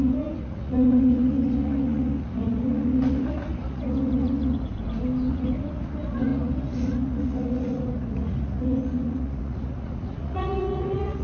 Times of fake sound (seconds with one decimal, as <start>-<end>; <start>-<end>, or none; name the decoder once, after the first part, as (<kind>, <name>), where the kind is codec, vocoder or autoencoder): 0.0-4.7 (vocoder, Vocos); 5.3-11.2

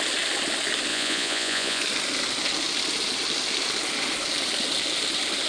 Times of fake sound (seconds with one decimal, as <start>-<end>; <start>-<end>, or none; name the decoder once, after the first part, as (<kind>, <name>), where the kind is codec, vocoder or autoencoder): 0.9-1.8 (vocoder, Vocos)

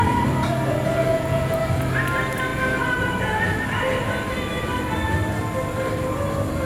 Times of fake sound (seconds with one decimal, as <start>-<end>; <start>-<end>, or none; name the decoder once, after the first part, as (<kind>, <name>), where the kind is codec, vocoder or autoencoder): 1.1-1.6 (vocoder, Vocos)

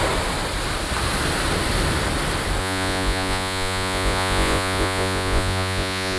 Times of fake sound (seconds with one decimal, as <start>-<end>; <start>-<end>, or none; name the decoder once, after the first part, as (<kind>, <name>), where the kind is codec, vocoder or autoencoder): 2.6-6.2 (vocoder, Vocos)

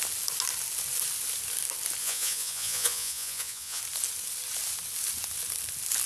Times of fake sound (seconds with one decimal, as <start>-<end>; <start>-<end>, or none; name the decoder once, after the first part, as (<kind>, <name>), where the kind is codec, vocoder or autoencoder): 2.0-3.8 (vocoder, Vocos)

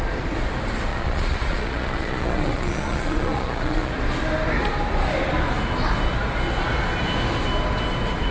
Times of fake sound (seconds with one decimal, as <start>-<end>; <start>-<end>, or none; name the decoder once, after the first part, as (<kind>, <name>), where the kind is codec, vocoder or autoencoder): 0.9-3.9 (vocoder, Vocos)